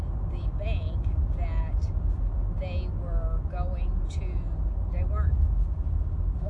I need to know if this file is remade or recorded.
recorded